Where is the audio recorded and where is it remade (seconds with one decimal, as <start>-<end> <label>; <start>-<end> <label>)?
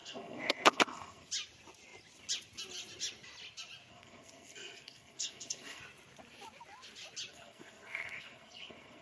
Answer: 0.0-1.3 remade; 1.3-3.9 recorded; 3.9-5.8 remade; 5.8-7.3 recorded; 7.3-9.0 remade